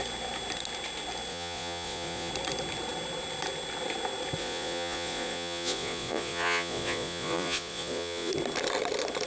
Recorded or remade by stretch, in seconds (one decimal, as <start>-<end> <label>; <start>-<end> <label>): 0.0-1.3 recorded; 1.3-2.3 remade; 2.3-4.4 recorded; 4.4-8.3 remade; 8.3-9.3 recorded